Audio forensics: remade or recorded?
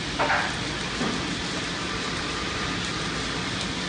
recorded